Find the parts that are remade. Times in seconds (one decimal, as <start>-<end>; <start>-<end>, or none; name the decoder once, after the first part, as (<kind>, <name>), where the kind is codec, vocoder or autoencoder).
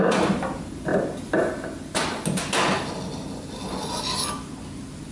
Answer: none